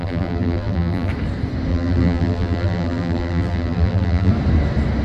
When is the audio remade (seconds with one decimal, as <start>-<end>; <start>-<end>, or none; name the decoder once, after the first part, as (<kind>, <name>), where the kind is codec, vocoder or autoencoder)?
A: 0.0-1.1 (vocoder, BigVGAN v2); 1.7-4.3